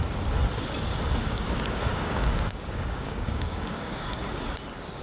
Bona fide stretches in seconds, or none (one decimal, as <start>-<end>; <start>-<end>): 0.0-1.2; 4.2-5.0